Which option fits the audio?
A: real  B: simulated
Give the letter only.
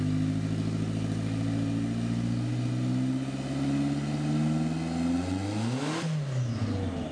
A